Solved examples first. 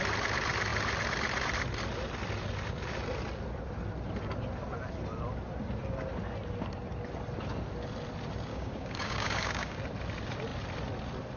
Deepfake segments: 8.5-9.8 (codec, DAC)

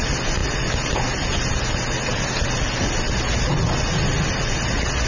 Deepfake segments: none